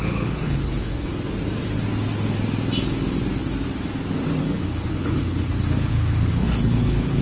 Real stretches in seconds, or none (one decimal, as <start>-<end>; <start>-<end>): 1.1-4.4